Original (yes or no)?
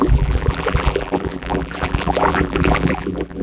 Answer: no